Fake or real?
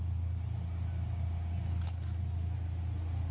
real